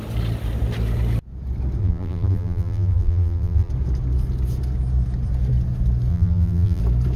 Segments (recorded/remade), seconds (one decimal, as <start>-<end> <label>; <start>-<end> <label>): 0.0-1.8 recorded; 1.8-3.7 remade; 3.7-6.1 recorded; 6.1-6.8 remade; 6.8-7.2 recorded